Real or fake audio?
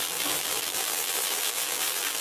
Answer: fake